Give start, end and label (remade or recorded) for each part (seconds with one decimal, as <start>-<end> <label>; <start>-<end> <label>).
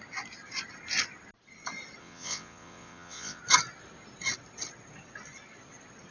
0.0-2.0 recorded; 2.0-3.4 remade; 3.4-6.1 recorded